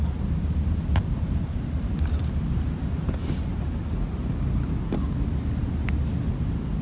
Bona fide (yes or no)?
yes